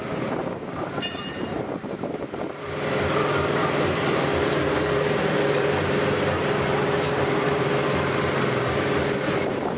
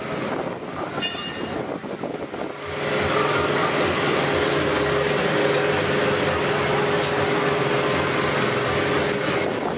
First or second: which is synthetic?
first